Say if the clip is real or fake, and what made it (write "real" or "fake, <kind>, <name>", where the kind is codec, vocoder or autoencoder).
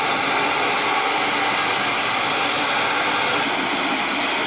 real